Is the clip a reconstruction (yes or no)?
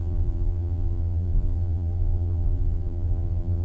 yes